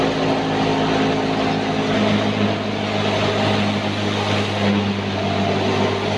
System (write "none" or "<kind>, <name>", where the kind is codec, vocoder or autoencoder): none